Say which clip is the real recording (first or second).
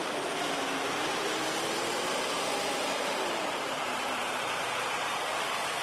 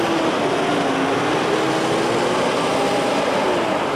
second